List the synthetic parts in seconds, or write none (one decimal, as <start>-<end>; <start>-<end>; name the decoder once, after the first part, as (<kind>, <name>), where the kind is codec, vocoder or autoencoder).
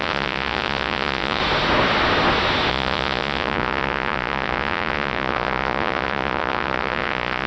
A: 0.0-1.4 (vocoder, Vocos); 2.7-7.5